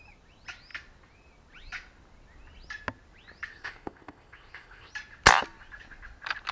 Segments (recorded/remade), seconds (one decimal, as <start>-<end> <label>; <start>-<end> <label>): 0.0-3.5 recorded; 3.5-4.9 remade; 4.9-6.5 recorded